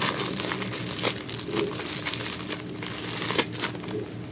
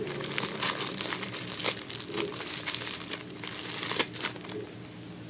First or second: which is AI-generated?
second